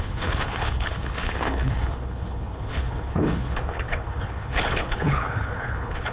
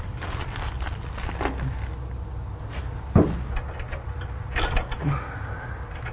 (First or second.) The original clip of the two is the second